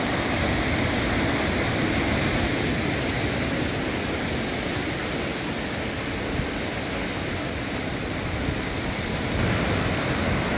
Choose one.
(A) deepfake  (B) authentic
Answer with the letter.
B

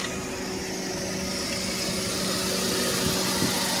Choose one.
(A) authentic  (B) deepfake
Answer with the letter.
A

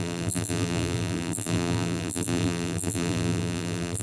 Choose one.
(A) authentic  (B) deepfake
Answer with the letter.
B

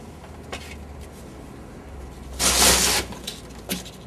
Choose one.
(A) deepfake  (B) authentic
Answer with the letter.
B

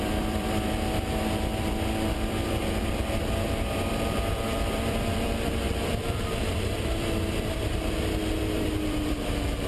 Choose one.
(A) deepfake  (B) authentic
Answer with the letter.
A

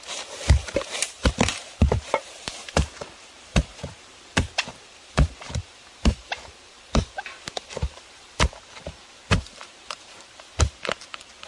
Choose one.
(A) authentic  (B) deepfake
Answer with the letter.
B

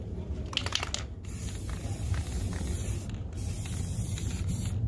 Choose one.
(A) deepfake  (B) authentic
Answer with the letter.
B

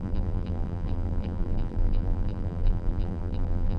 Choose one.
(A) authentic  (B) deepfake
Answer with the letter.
B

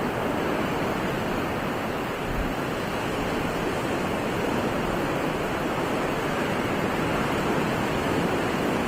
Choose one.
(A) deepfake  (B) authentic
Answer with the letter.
B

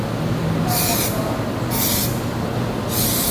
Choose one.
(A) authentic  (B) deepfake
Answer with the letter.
A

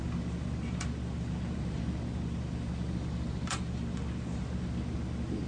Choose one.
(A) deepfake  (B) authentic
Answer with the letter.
B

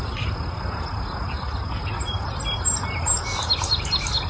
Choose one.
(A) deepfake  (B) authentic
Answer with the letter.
B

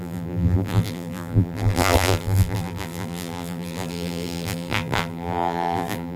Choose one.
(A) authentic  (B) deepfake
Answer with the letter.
B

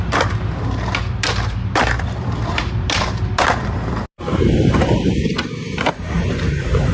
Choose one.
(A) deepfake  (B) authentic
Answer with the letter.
A